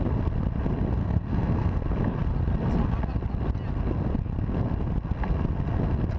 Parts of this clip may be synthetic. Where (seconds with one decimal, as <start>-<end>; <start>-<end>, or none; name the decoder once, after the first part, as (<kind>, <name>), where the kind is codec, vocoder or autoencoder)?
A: 1.0-1.8 (codec, SNAC)